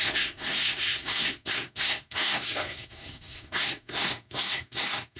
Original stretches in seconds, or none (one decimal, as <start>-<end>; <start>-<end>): none